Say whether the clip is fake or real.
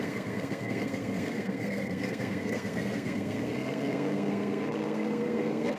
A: fake